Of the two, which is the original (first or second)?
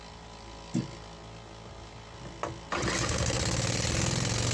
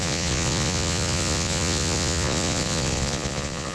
first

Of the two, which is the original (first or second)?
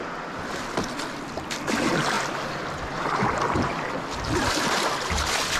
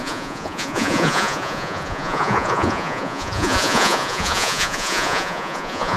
first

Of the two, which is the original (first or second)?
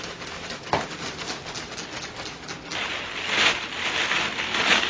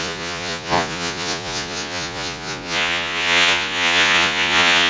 first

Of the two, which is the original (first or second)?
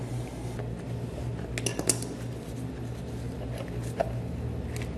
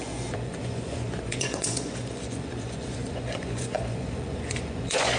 first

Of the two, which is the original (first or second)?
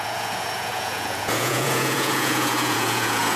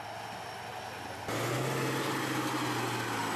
second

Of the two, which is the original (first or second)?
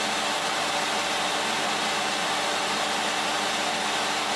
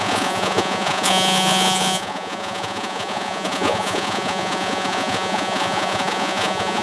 first